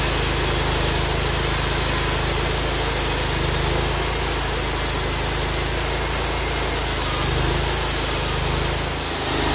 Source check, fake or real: real